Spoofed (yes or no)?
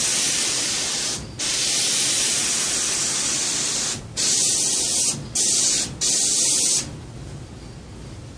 no